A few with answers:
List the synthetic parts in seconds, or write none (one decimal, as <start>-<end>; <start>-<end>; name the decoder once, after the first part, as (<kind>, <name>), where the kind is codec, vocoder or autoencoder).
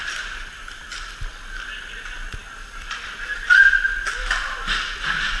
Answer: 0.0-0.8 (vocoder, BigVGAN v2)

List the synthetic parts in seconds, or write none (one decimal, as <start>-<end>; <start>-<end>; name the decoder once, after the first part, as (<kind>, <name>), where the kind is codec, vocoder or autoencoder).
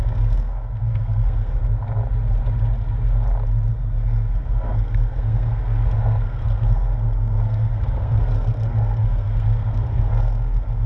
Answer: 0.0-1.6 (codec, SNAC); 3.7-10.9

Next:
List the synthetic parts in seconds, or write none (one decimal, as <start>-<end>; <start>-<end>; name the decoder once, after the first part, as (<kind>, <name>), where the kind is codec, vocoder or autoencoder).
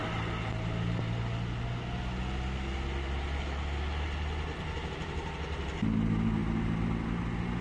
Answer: none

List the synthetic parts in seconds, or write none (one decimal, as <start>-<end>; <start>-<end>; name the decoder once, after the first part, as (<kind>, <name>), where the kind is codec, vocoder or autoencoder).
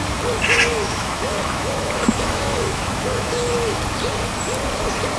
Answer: 0.7-3.8 (autoencoder, DAC-VAE)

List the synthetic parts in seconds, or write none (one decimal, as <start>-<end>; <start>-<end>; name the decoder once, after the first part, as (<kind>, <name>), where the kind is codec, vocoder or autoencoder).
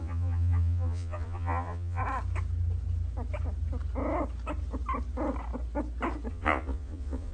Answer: 0.0-2.0 (vocoder, Vocos); 6.3-7.3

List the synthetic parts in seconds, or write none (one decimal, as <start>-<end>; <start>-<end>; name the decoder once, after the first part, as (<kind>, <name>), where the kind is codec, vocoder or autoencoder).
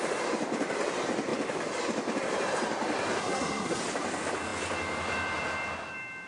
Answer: 3.2-3.8 (codec, SNAC)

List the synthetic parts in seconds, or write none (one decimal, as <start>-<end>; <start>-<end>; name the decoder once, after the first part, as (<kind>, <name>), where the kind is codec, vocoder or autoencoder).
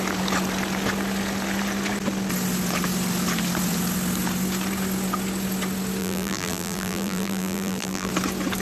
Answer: 6.0-8.1 (vocoder, BigVGAN v2)